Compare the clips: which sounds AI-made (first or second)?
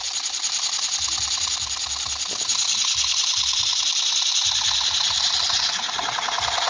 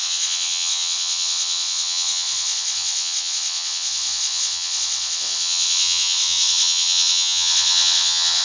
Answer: second